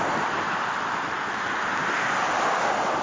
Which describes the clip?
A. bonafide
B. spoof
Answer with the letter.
A